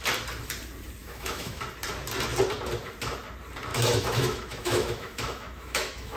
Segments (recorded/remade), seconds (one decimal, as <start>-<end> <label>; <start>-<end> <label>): 0.0-1.0 recorded; 1.0-1.6 remade; 1.6-3.7 recorded; 3.7-6.2 remade